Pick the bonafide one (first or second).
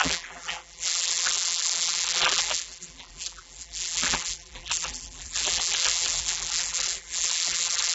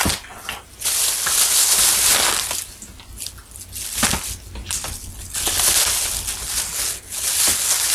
second